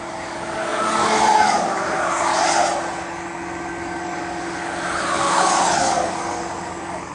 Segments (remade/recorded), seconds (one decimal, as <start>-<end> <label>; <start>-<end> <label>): 0.0-2.3 remade; 2.3-3.0 recorded; 3.0-7.1 remade